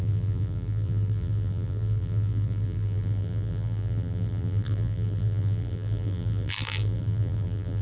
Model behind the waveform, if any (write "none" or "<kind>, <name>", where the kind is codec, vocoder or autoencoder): vocoder, BigVGAN v2